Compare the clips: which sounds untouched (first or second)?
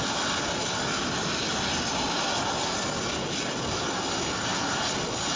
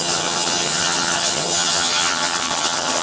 first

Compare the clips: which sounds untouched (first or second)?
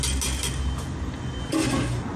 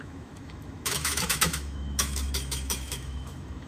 first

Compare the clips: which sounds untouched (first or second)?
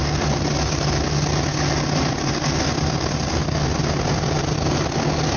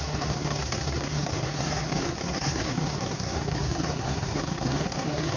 first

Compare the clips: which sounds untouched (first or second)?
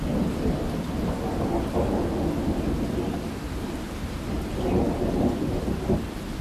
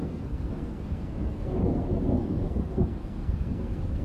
first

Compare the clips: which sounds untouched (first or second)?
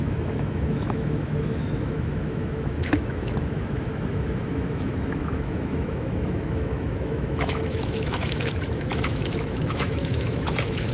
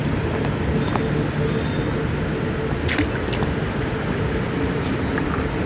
second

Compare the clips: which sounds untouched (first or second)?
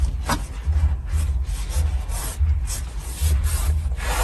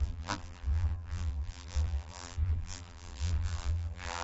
first